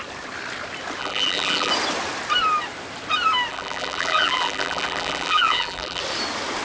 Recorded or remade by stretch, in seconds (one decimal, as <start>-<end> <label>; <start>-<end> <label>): 0.0-1.0 recorded; 1.0-1.7 remade; 1.7-3.5 recorded; 3.5-6.0 remade; 6.0-6.6 recorded